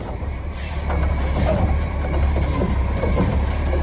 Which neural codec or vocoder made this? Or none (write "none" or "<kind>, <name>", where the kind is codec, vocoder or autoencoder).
vocoder, BigVGAN v2